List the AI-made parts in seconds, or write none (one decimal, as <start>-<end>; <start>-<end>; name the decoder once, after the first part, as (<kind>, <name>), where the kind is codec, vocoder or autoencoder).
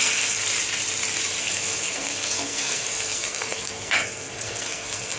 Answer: 0.0-0.4 (codec, SNAC); 1.4-5.2